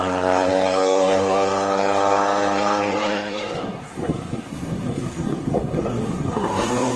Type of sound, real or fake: fake